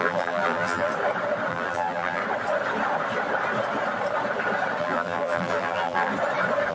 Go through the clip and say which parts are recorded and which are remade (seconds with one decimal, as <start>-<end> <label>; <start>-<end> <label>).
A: 0.0-0.9 remade; 0.9-1.5 recorded; 1.5-2.2 remade; 2.2-4.8 recorded; 4.8-6.1 remade; 6.1-6.7 recorded